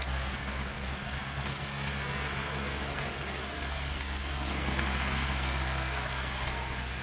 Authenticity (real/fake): fake